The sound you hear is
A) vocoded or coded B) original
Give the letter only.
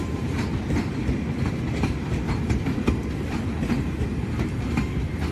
A